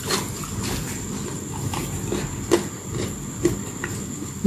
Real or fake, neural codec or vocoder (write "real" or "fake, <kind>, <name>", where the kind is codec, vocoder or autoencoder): real